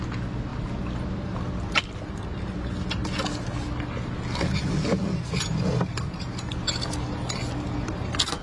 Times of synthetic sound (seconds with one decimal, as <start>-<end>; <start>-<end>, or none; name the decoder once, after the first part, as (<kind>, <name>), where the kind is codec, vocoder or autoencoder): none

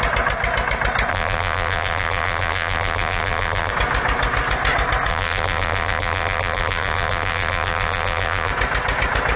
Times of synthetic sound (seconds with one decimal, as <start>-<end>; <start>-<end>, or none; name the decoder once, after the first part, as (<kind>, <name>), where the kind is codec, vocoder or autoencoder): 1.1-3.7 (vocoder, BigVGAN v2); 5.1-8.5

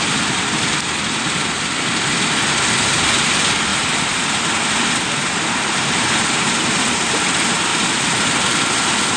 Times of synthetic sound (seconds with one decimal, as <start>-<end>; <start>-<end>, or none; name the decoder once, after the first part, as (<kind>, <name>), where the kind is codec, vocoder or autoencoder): 3.7-7.2 (vocoder, BigVGAN v2); 7.7-8.7

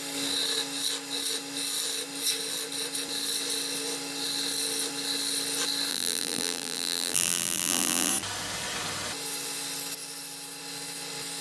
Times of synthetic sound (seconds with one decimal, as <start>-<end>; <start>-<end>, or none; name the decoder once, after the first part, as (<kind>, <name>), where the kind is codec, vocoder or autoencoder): 5.9-8.1 (vocoder, BigVGAN v2)

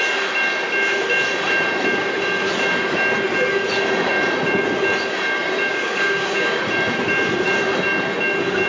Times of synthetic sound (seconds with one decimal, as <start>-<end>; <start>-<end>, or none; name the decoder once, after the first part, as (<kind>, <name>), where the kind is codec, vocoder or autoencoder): 5.7-6.6 (codec, DAC)

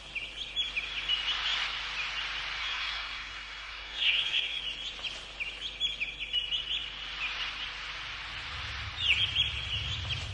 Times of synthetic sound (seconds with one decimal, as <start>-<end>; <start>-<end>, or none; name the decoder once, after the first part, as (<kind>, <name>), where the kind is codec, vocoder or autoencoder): 2.6-4.6 (codec, SNAC)

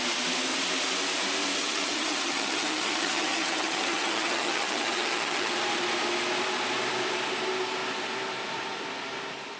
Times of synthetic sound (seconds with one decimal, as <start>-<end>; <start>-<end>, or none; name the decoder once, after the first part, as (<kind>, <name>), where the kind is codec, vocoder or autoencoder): 1.6-5.5 (vocoder, HiFi-GAN)

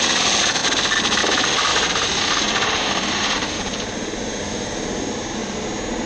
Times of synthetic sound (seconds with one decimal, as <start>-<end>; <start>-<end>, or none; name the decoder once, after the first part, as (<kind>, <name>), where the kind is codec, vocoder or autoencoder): 1.7-5.4 (vocoder, BigVGAN v2)